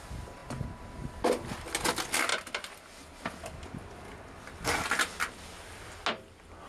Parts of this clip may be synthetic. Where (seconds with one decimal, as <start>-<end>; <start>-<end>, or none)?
none